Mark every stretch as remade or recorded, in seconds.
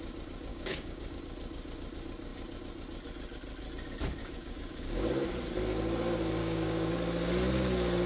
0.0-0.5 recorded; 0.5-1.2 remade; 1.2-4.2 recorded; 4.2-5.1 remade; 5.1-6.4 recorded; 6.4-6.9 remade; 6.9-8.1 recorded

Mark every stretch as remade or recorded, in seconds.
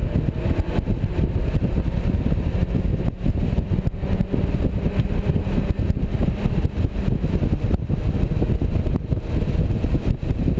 0.0-10.6 recorded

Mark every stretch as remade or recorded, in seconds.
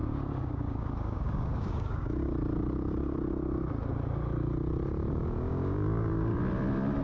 0.0-2.3 remade; 2.3-5.1 recorded; 5.1-6.3 remade; 6.3-7.0 recorded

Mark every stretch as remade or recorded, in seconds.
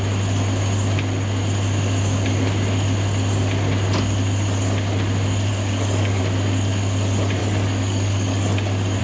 0.0-5.5 recorded; 5.5-6.2 remade; 6.2-7.4 recorded; 7.4-9.0 remade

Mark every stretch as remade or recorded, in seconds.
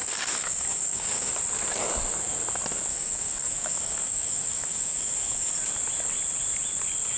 0.0-1.3 remade; 1.3-2.9 recorded; 2.9-5.5 remade; 5.5-7.2 recorded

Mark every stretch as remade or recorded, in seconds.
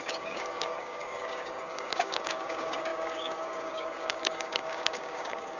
0.0-5.6 remade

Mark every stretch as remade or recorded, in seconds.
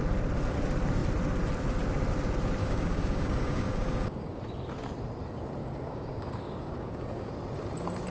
0.0-2.6 recorded; 2.6-4.4 remade; 4.4-5.6 recorded; 5.6-7.3 remade; 7.3-8.1 recorded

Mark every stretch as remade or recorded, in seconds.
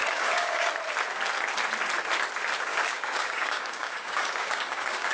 0.0-0.7 remade; 0.7-2.7 recorded; 2.7-5.1 remade